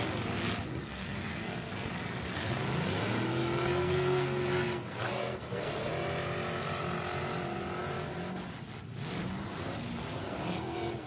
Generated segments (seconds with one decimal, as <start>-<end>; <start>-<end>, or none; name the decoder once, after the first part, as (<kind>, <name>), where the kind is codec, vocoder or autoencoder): 0.7-2.6 (codec, SNAC); 3.4-5.9; 10.2-11.1